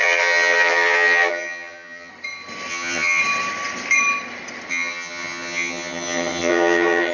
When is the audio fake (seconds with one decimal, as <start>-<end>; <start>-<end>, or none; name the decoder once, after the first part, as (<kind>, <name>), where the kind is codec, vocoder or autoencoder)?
0.0-2.1 (vocoder, HiFi-GAN); 2.7-3.2; 4.7-7.1